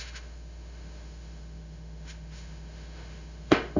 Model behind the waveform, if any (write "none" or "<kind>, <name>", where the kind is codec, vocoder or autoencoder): autoencoder, DAC-VAE